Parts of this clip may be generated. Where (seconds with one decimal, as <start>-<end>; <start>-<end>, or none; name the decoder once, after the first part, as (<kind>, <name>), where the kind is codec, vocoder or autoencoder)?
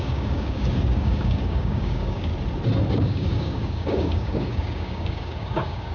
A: 0.0-2.3 (codec, DAC); 2.9-5.9